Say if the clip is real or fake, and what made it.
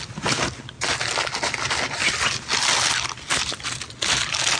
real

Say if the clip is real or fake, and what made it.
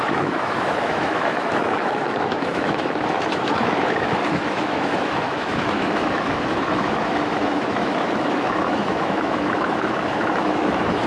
fake, autoencoder, DAC-VAE